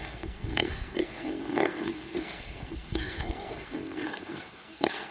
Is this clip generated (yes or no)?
yes